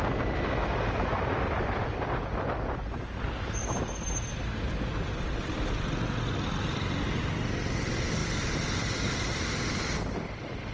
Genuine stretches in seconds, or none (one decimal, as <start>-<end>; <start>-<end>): 0.0-10.7